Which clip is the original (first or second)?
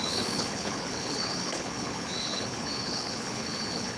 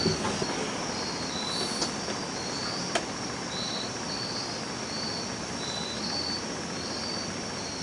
second